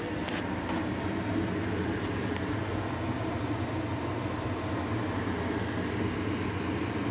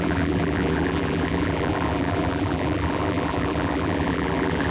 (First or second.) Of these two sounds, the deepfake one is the second